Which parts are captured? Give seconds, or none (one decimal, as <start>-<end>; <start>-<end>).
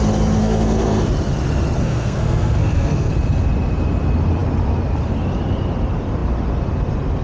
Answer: 0.0-0.4; 1.1-1.8; 3.1-7.2